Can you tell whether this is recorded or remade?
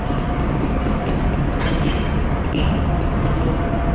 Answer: recorded